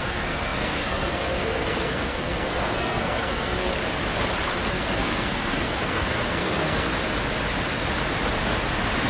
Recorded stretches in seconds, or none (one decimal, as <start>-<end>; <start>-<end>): 3.7-4.7; 6.9-9.1